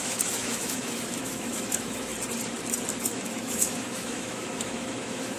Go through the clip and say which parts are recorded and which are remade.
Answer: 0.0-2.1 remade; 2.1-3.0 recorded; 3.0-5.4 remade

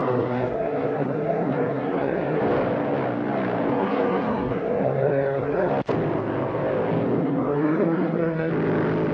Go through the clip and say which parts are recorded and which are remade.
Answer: 0.0-2.4 remade; 2.4-3.7 recorded; 3.7-5.7 remade; 5.7-7.2 recorded; 7.2-8.5 remade; 8.5-9.1 recorded

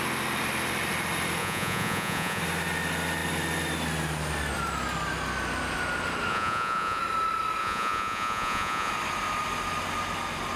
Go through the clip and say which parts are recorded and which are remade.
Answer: 0.0-1.4 recorded; 1.4-2.4 remade; 2.4-6.3 recorded; 6.3-7.0 remade; 7.0-7.6 recorded; 7.6-8.9 remade; 8.9-10.6 recorded

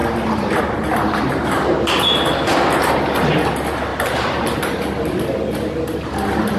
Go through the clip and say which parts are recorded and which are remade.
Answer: 0.0-3.9 recorded; 3.9-4.8 remade; 4.8-6.6 recorded

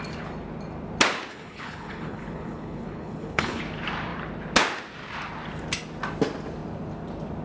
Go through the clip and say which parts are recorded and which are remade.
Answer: 0.0-1.3 recorded; 1.3-3.6 remade; 3.6-7.4 recorded

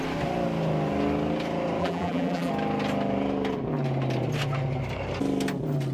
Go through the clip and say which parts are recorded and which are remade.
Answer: 0.0-1.8 recorded; 1.8-2.5 remade; 2.5-5.9 recorded

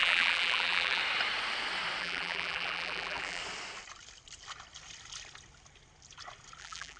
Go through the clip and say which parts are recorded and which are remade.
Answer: 0.0-1.0 remade; 1.0-2.0 recorded; 2.0-3.4 remade; 3.4-6.6 recorded; 6.6-7.0 remade